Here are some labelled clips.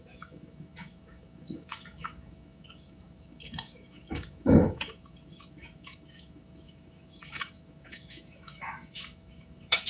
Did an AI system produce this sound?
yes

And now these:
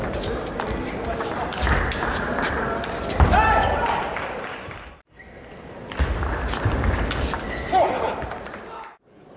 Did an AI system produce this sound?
no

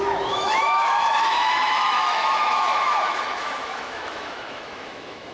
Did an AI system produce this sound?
yes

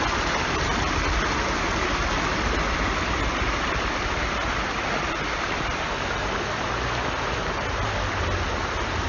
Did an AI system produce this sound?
no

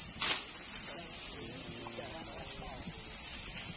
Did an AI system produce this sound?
no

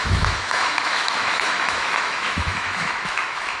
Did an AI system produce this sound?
yes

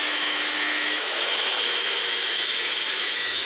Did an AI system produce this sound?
yes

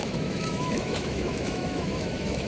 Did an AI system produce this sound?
yes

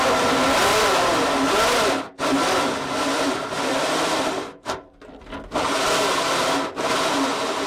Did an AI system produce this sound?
no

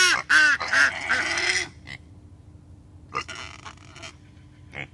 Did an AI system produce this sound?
no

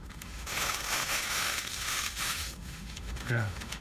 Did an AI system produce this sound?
yes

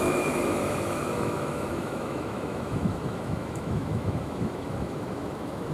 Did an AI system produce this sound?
yes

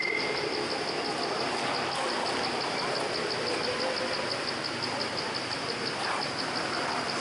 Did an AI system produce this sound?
no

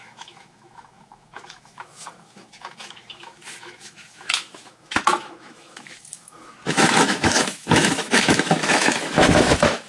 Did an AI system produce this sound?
yes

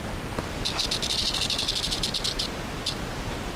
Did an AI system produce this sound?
no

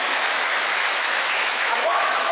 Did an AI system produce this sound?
yes